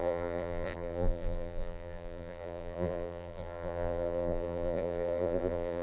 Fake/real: fake